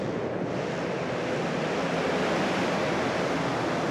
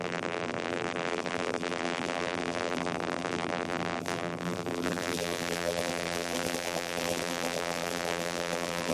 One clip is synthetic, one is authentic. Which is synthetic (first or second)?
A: second